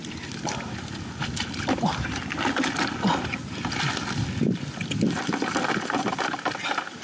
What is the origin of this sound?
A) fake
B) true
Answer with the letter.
B